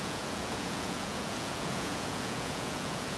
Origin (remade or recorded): remade